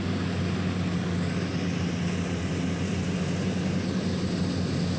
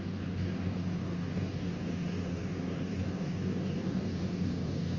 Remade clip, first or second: second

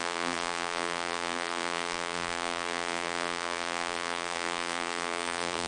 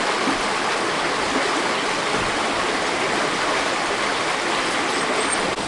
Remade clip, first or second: first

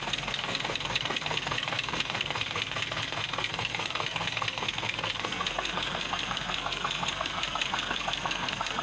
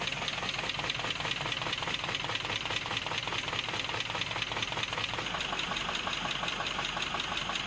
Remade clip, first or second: first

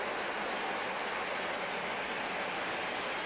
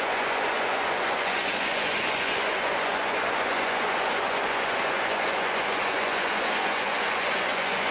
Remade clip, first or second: second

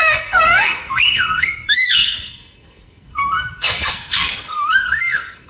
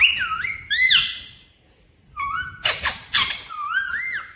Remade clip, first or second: first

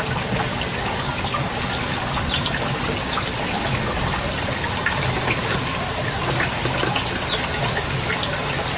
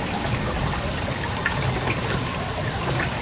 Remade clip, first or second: second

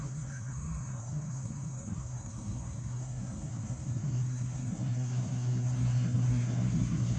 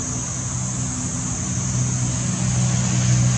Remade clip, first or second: first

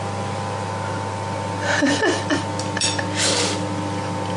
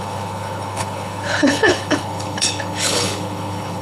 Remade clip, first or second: second